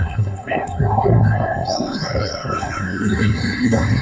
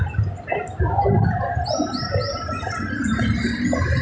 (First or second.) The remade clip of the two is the first